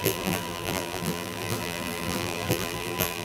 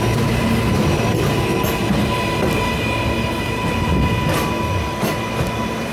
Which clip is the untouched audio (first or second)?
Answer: second